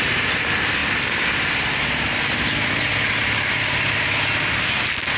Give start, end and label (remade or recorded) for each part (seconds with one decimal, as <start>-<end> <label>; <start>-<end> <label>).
0.0-5.2 recorded